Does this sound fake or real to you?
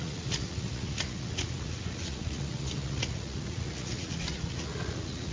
fake